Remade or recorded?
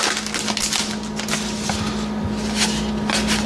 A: recorded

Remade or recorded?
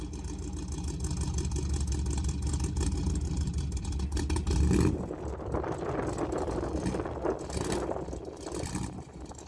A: recorded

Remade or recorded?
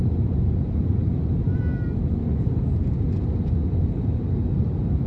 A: recorded